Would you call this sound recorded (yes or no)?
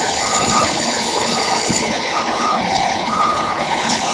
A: no